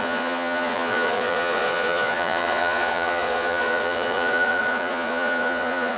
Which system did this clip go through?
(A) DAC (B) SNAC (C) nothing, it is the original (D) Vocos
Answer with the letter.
D